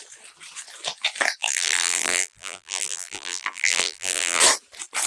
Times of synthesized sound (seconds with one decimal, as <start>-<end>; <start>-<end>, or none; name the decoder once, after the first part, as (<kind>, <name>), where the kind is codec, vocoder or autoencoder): 1.4-4.4 (vocoder, BigVGAN v2)